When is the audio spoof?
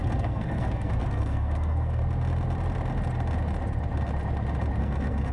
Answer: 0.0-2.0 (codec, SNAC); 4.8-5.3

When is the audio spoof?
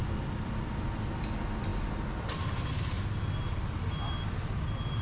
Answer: none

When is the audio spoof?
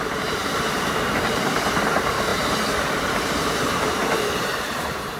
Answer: 0.0-2.3 (vocoder, BigVGAN v2); 3.1-5.2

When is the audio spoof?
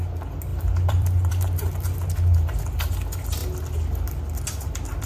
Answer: 0.5-1.3 (vocoder, BigVGAN v2)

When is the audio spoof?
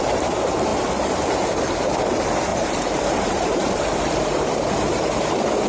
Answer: 2.5-5.2 (vocoder, BigVGAN v2)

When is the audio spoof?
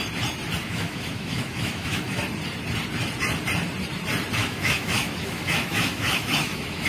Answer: 0.6-2.2 (autoencoder, DAC-VAE); 4.4-6.9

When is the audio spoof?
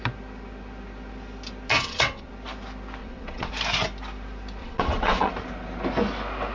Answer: 1.7-2.3 (vocoder, WaveNeXt); 3.0-3.5; 4.6-5.3